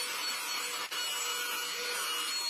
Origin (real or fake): real